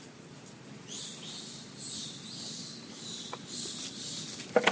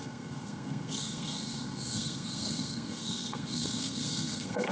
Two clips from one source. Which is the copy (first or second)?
second